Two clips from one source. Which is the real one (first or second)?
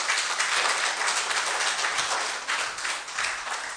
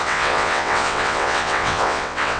first